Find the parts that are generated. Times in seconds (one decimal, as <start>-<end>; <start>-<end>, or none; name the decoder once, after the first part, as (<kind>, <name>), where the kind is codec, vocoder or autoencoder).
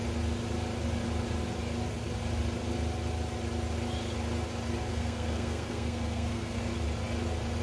4.9-6.7 (codec, SNAC)